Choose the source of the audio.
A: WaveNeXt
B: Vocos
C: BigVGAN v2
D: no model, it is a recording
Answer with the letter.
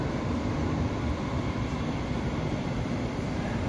C